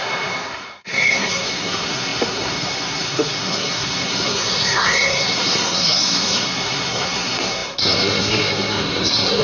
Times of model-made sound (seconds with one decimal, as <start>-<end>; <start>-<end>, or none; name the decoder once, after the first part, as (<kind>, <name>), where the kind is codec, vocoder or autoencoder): 0.0-9.4 (codec, SNAC)